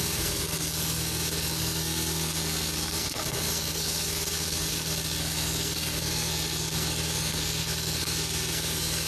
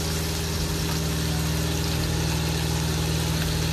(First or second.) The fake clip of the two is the first